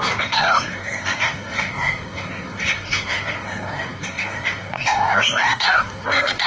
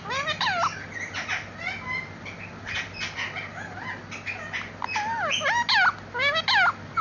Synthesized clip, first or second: first